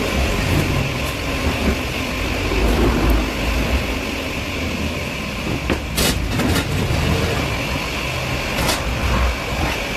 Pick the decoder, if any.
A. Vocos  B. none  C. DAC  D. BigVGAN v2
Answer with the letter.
B